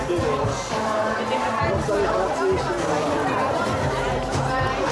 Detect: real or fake real